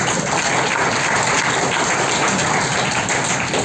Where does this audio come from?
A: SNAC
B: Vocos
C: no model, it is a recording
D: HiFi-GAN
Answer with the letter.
C